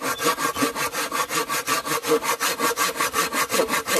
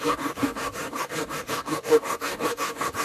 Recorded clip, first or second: first